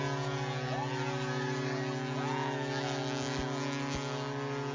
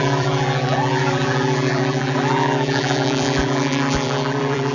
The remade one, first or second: second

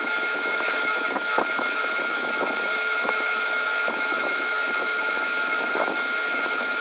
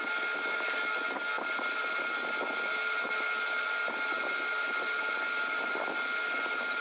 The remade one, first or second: first